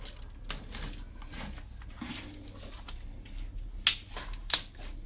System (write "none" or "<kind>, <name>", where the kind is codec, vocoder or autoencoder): none